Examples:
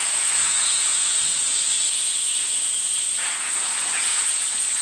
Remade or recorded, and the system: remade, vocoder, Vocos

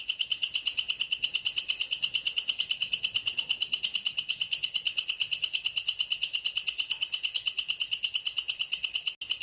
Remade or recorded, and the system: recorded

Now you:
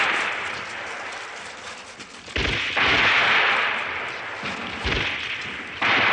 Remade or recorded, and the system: recorded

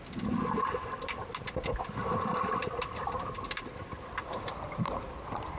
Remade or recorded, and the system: recorded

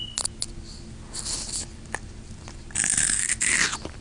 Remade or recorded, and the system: recorded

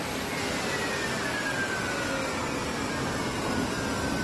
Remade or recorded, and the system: recorded